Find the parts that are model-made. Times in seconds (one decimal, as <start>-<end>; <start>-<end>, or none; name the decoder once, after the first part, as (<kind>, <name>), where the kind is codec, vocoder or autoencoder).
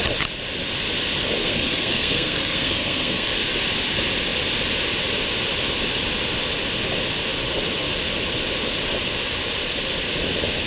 1.4-3.3 (codec, SNAC)